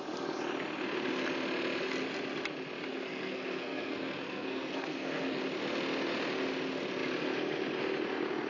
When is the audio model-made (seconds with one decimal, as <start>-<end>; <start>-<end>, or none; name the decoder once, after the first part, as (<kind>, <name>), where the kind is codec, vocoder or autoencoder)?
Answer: 2.9-5.4 (codec, SNAC)